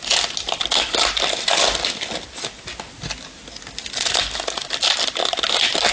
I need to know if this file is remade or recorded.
recorded